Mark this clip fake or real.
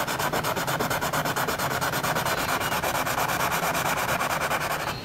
real